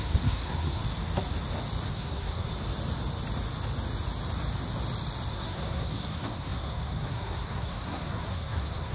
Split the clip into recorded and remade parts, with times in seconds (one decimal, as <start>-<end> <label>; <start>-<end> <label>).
0.0-0.8 remade; 0.8-1.9 recorded; 1.9-2.5 remade; 2.5-5.3 recorded; 5.3-8.9 remade